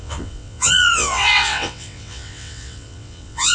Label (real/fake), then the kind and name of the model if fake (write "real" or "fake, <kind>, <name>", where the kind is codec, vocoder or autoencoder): fake, vocoder, WaveNeXt